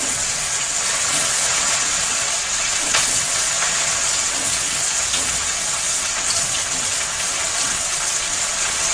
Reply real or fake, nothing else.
fake